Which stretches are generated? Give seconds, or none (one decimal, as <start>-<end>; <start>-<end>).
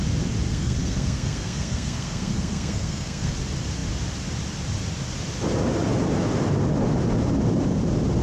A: 0.5-3.3